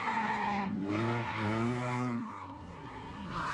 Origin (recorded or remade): remade